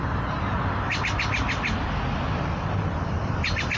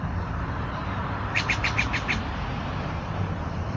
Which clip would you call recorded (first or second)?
first